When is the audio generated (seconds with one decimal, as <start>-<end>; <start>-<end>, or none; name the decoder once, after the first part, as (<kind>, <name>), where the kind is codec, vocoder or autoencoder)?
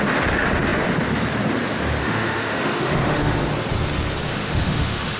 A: 2.0-3.4 (autoencoder, DAC-VAE); 4.3-5.2